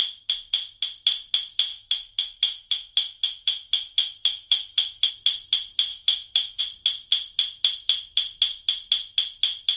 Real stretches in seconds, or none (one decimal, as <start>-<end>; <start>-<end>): 0.0-1.7; 5.1-5.9; 6.6-9.8